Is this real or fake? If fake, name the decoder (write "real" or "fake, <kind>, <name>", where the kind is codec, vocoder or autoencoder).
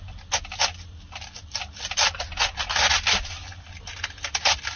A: real